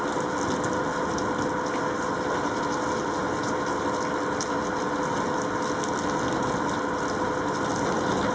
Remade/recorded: recorded